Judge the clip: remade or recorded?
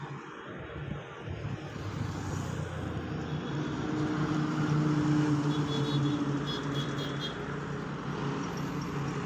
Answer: recorded